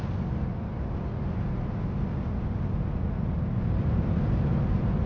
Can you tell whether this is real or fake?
fake